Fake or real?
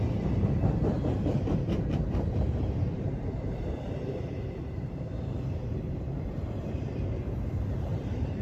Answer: fake